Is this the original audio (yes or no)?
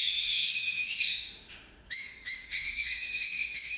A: no